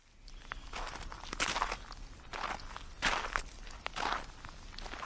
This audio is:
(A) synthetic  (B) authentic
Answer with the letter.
B